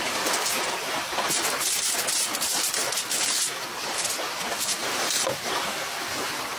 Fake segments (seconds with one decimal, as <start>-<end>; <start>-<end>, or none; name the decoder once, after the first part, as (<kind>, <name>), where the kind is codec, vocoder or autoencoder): 4.8-5.5 (vocoder, BigVGAN v2)